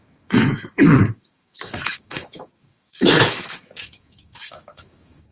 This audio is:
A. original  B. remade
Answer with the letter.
B